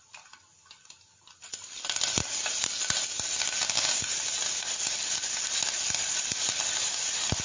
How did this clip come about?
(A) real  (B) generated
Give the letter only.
A